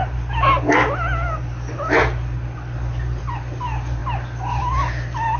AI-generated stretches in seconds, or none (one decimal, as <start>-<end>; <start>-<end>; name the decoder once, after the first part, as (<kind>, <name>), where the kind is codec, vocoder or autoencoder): none

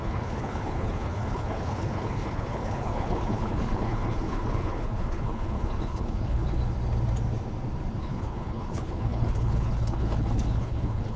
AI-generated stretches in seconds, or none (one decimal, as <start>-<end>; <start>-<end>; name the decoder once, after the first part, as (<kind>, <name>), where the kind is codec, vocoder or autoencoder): 0.0-6.6 (codec, HILCodec); 8.0-11.2

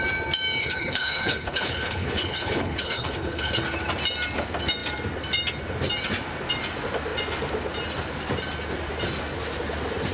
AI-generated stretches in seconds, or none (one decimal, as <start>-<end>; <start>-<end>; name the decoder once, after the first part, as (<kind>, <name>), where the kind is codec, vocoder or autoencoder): 0.6-3.6 (codec, HILCodec)

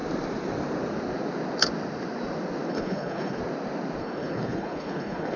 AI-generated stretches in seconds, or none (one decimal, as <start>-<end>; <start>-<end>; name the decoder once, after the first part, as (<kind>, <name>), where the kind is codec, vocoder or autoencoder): 2.7-3.4 (codec, HILCodec); 4.0-5.4

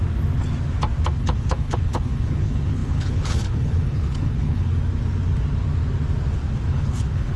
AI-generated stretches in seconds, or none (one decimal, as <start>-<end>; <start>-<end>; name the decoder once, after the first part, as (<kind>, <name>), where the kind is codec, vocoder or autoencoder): 1.2-4.7 (codec, HILCodec); 6.7-7.4

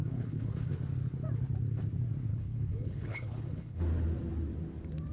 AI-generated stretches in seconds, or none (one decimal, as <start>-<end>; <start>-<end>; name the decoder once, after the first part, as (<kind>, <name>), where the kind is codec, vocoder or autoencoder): 0.0-0.7 (codec, HILCodec); 2.3-3.8

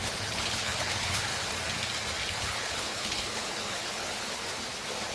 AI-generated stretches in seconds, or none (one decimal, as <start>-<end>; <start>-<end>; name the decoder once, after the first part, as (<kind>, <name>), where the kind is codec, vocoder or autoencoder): 0.0-1.3 (codec, HILCodec); 2.3-4.4

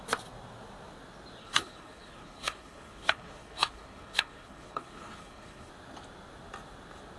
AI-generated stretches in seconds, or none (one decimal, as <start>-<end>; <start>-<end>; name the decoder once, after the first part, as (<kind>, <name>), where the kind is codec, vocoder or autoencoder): 1.4-5.7 (codec, HILCodec)